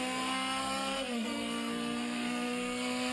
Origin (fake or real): fake